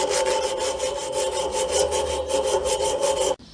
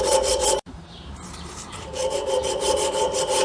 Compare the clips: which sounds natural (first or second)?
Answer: first